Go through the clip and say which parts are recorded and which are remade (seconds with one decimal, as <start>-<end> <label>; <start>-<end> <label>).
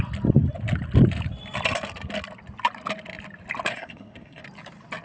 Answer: 0.0-3.7 recorded; 3.7-4.4 remade; 4.4-5.0 recorded